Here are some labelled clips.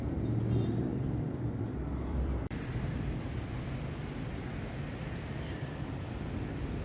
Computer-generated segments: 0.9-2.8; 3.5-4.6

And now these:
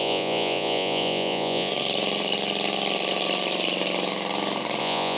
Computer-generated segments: 0.0-1.7; 4.8-5.2

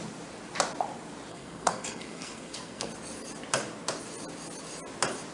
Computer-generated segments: 1.3-2.9

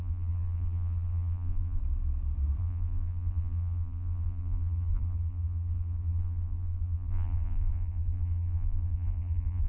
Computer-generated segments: 0.0-1.8; 2.6-9.7

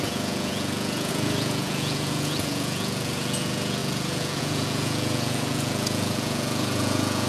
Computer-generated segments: 0.0-7.3

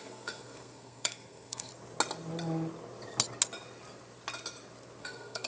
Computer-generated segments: 0.0-1.7; 5.0-5.5

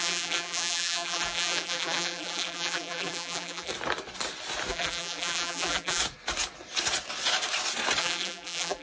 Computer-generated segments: 0.0-3.7; 4.7-6.0; 8.0-8.8